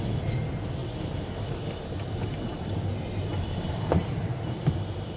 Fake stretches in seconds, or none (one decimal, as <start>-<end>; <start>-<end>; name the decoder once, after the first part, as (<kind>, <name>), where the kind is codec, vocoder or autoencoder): 0.8-3.9 (vocoder, BigVGAN v2)